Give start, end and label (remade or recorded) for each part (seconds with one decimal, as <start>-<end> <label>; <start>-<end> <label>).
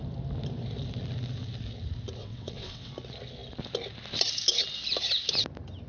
0.0-2.2 recorded; 2.2-2.9 remade; 2.9-5.9 recorded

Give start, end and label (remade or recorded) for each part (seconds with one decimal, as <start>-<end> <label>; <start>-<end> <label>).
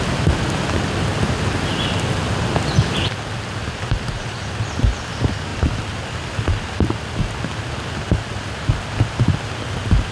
0.0-10.1 recorded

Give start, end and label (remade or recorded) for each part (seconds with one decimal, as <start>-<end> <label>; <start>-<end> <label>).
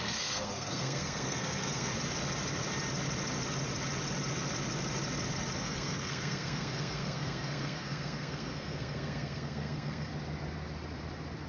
0.0-1.9 remade; 1.9-5.6 recorded; 5.6-10.1 remade; 10.1-11.5 recorded